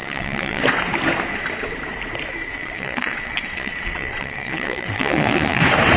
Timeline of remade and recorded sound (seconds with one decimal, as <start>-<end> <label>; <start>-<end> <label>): 0.0-0.6 remade; 0.6-2.5 recorded; 2.5-5.6 remade; 5.6-6.0 recorded